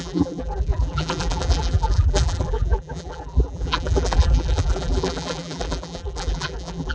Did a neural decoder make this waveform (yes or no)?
yes